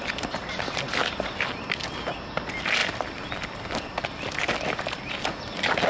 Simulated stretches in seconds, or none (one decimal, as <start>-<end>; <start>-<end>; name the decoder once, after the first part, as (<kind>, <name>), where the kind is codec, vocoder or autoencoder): 1.0-2.1 (vocoder, BigVGAN v2); 2.8-5.2